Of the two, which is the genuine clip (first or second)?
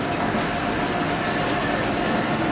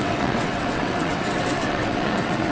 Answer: first